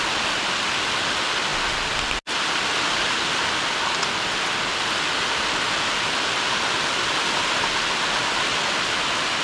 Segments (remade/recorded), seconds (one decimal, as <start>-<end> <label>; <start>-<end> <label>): 0.0-9.4 recorded